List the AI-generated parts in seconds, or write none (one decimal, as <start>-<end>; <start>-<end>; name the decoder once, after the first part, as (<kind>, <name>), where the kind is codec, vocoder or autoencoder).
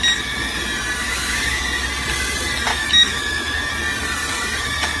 1.0-1.6 (autoencoder, DAC-VAE); 2.7-3.7